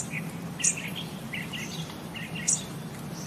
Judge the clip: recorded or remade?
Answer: recorded